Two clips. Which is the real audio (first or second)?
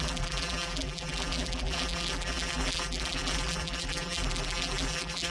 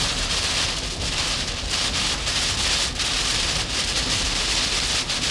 second